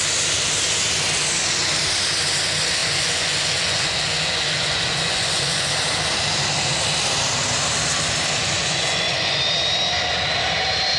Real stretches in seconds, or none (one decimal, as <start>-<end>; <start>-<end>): 0.0-2.8; 5.7-8.4; 9.4-11.0